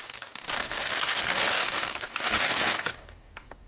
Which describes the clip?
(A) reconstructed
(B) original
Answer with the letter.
A